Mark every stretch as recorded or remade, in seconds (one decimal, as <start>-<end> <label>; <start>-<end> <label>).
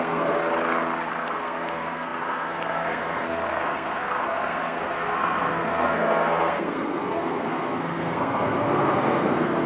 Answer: 0.0-0.4 remade; 0.4-1.4 recorded; 1.4-9.7 remade